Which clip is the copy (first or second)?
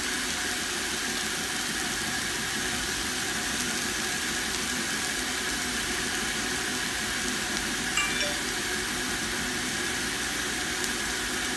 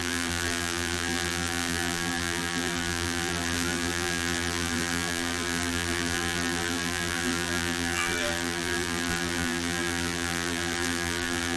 second